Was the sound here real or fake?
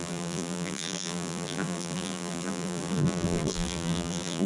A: fake